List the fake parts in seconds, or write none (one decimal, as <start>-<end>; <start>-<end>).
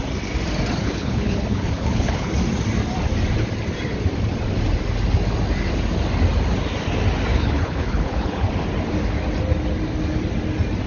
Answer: 0.8-2.3; 7.3-8.5